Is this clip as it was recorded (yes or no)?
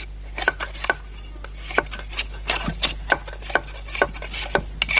yes